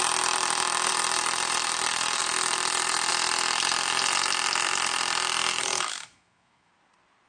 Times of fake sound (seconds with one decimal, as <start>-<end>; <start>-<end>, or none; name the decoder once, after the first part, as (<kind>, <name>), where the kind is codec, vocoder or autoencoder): 5.5-6.7 (autoencoder, DAC-VAE)